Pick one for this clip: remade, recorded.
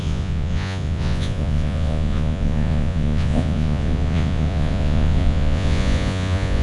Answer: remade